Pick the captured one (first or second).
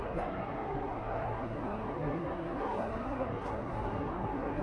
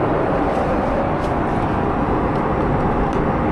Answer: second